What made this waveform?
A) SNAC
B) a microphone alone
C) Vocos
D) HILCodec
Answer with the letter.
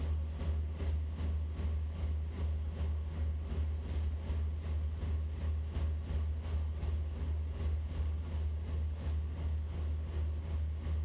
B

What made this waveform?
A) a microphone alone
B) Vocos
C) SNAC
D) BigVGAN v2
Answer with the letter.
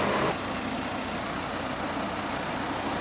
A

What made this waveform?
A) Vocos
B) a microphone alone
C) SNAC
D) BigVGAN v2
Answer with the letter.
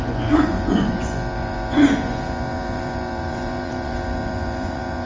A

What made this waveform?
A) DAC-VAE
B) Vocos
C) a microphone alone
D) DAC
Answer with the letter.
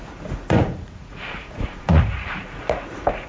B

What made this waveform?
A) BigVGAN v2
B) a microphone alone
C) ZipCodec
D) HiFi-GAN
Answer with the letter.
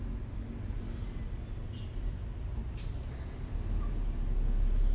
B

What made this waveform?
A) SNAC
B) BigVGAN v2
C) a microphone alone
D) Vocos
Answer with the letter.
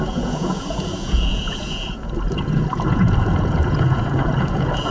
D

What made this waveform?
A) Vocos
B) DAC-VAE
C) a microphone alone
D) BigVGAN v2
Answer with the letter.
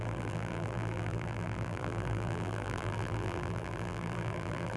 D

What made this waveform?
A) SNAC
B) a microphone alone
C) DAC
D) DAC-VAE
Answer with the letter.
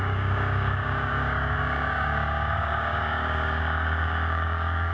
C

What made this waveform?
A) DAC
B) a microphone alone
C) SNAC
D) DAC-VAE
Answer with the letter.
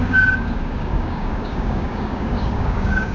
A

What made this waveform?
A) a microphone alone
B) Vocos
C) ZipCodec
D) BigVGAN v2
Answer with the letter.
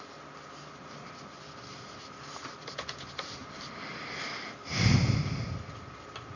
A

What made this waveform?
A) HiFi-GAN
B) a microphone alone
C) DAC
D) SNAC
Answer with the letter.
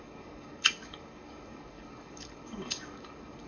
C